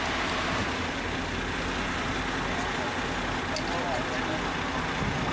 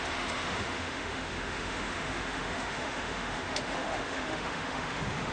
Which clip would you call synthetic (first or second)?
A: second